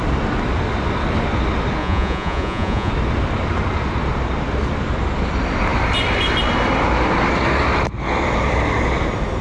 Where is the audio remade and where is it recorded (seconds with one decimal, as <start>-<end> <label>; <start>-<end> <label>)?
0.0-1.8 recorded; 1.8-2.9 remade; 2.9-9.4 recorded